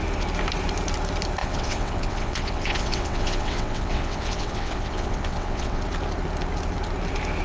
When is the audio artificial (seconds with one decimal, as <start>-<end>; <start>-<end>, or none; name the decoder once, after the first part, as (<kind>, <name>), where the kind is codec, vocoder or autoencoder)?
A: 1.4-5.8 (vocoder, WaveNeXt)